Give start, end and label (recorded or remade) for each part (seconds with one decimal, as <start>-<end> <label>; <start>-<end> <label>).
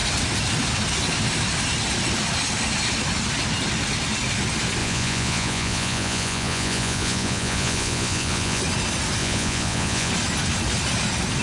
0.0-4.8 recorded; 4.8-8.6 remade; 8.6-9.2 recorded; 9.2-10.1 remade; 10.1-11.4 recorded